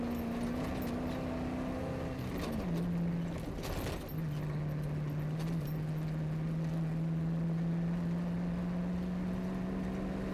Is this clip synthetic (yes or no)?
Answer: no